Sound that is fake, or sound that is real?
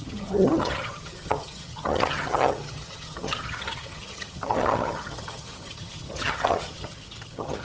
fake